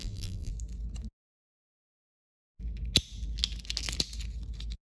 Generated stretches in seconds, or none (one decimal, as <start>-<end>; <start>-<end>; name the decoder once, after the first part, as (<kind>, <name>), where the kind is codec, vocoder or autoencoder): 0.0-0.5 (vocoder, BigVGAN v2)